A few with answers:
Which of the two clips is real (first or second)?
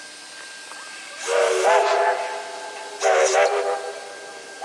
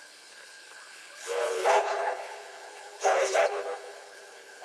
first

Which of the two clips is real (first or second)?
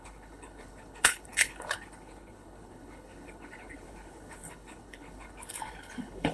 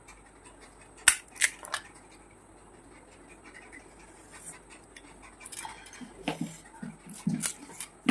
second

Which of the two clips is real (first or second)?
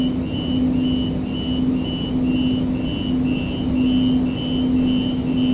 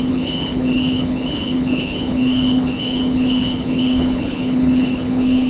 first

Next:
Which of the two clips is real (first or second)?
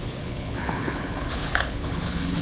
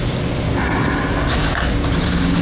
second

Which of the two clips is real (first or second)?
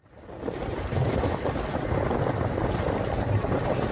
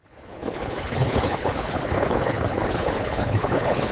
first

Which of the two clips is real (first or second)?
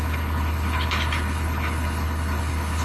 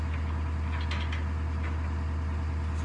second